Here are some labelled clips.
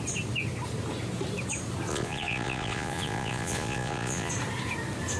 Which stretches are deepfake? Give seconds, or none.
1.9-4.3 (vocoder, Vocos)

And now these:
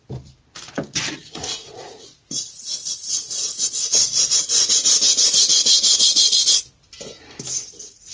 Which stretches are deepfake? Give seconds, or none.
1.2-3.1 (vocoder, Vocos); 4.1-4.7

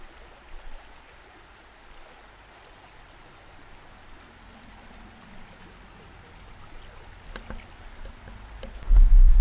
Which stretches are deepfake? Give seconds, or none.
8.7-9.4 (codec, SNAC)

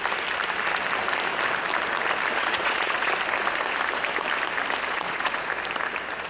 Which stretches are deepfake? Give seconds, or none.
2.4-3.1 (vocoder, Vocos); 4.9-5.5